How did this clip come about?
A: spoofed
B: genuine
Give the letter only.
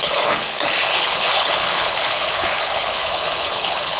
A